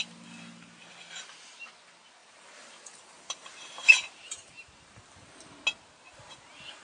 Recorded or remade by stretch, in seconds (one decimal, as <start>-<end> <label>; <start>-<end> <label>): 0.0-2.2 recorded; 2.2-5.0 remade; 5.0-6.8 recorded